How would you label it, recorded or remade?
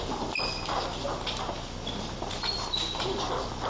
recorded